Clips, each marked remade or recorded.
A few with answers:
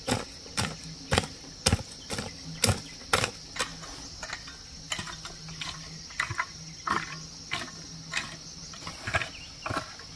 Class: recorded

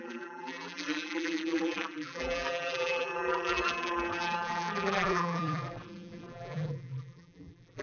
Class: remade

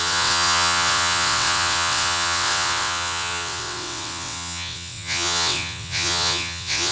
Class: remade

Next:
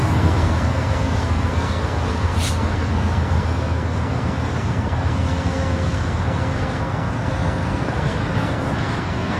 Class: remade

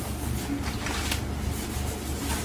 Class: recorded